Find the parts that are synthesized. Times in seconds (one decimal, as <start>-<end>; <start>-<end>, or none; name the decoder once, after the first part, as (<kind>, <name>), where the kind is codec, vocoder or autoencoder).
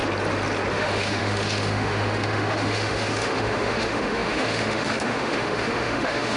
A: 0.7-6.4 (autoencoder, DAC-VAE)